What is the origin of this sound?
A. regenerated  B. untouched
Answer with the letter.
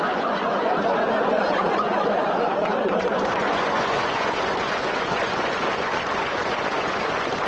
A